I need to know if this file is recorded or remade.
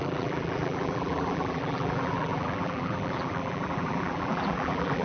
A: remade